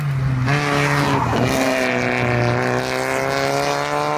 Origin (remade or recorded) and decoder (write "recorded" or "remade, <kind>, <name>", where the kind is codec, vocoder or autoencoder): recorded